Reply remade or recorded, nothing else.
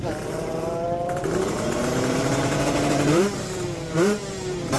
remade